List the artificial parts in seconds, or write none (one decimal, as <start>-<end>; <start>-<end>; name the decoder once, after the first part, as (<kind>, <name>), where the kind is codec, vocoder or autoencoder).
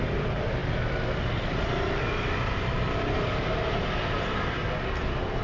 none